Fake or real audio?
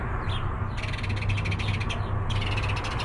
real